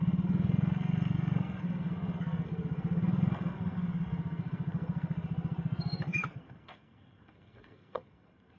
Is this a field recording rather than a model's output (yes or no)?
no